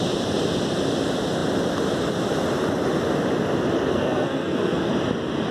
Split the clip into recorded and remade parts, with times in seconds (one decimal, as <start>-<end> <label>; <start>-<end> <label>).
0.0-3.9 recorded; 3.9-4.9 remade; 4.9-5.5 recorded